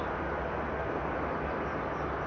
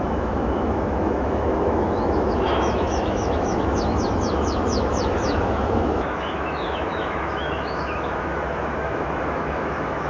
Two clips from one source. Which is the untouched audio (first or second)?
first